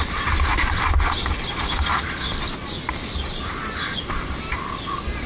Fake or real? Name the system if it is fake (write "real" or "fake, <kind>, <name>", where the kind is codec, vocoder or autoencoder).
real